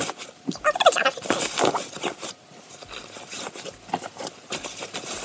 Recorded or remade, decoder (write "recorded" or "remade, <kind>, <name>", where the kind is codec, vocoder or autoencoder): recorded